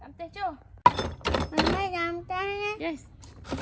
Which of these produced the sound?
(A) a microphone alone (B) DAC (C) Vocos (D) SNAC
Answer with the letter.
A